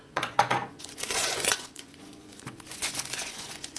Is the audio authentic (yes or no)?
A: no